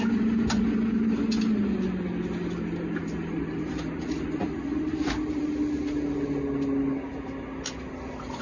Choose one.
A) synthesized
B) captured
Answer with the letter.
B